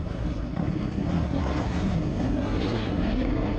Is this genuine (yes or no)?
no